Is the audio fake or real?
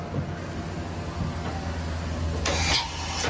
real